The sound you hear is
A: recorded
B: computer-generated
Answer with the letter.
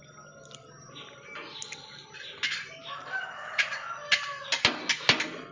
A